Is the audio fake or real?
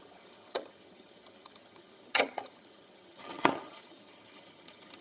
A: fake